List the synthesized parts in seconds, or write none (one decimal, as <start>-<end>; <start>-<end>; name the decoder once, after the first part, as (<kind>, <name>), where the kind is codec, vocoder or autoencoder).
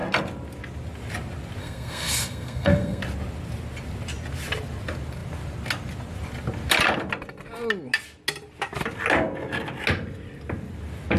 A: 1.6-3.0 (codec, SNAC)